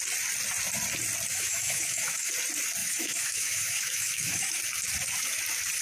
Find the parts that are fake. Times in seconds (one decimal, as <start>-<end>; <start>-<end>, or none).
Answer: 1.3-2.3; 2.8-4.6